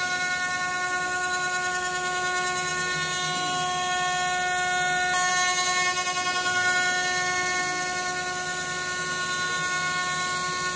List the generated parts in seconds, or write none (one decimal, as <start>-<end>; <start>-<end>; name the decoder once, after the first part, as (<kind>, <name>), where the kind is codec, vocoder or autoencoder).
none